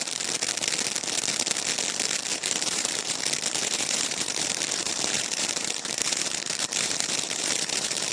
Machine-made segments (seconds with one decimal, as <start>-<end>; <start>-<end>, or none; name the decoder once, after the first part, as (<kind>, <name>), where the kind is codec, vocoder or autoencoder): 2.3-3.2 (vocoder, BigVGAN v2); 3.6-8.1